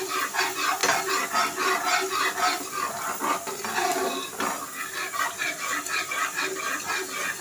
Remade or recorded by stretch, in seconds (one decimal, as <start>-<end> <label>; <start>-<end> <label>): 0.0-7.4 recorded